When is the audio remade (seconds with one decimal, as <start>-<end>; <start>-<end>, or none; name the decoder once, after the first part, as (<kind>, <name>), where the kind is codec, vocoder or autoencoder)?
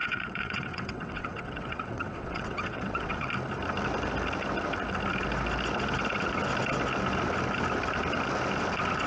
0.0-3.3 (vocoder, WaveNeXt)